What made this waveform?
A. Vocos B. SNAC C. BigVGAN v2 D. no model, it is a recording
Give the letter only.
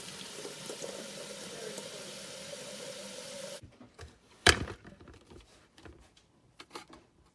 C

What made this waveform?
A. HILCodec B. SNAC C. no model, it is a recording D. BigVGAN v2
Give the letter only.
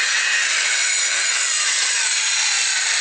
D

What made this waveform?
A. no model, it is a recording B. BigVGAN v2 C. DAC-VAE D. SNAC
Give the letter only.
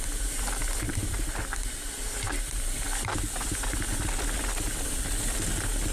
A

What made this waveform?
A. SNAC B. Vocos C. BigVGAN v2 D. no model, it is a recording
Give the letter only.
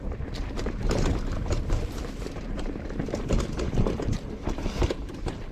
C